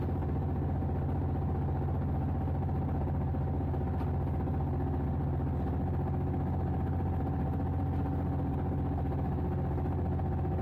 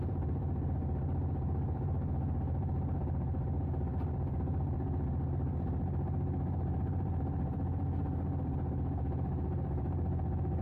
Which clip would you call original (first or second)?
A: first